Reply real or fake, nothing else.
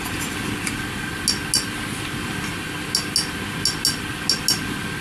real